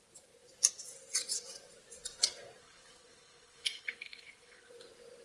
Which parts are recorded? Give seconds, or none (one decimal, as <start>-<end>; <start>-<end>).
0.0-2.6; 4.7-5.2